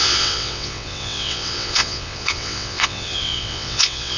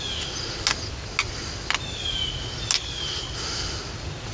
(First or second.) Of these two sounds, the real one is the second